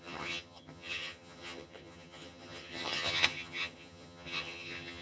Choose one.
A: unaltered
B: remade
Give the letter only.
B